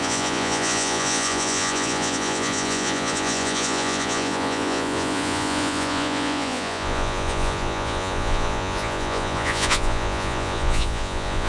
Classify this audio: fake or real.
fake